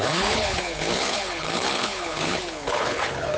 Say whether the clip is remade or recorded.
remade